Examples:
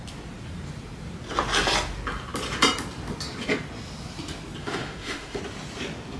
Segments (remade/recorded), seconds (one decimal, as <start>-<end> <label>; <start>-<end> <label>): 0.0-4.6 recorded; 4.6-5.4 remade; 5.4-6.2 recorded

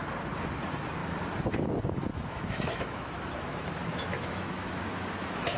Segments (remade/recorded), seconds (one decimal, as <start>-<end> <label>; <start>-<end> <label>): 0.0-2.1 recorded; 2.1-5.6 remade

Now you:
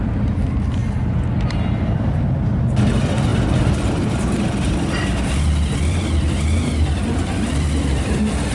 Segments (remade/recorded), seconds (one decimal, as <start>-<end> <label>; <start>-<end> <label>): 0.0-0.8 remade; 0.8-1.4 recorded; 1.4-8.5 remade